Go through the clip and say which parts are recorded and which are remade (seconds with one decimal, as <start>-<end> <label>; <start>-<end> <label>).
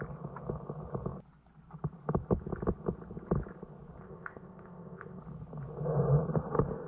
0.0-4.0 recorded; 4.0-5.2 remade; 5.2-6.9 recorded